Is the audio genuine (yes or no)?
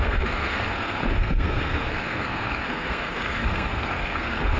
no